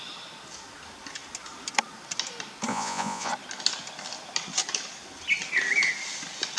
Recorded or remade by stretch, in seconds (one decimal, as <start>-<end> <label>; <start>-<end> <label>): 0.0-2.7 recorded; 2.7-3.3 remade; 3.3-6.6 recorded